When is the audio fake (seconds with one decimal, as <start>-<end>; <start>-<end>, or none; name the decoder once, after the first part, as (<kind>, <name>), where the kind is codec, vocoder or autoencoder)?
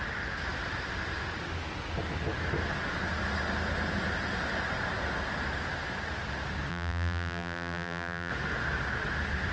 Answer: 6.7-8.3 (vocoder, BigVGAN v2)